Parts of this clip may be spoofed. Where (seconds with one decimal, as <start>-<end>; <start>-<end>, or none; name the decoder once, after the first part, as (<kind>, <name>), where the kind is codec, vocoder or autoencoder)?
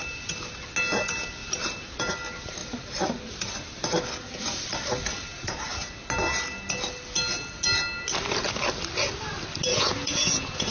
9.7-10.7 (vocoder, Vocos)